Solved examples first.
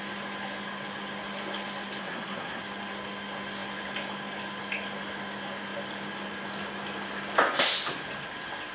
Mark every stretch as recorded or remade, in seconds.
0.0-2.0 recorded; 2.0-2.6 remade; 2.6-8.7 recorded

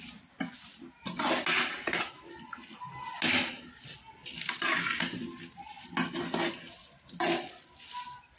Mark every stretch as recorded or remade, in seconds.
0.0-8.4 recorded

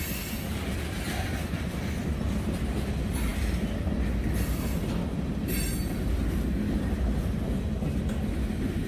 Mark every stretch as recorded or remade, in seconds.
0.0-8.9 recorded

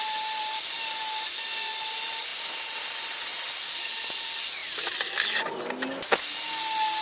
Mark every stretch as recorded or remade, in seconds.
0.0-7.0 recorded

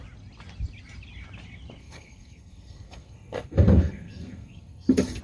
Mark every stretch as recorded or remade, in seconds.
0.0-1.8 recorded; 1.8-5.2 remade

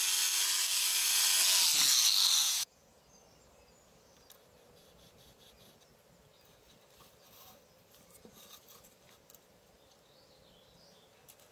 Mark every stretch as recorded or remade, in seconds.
0.0-2.4 recorded; 2.4-3.0 remade; 3.0-11.5 recorded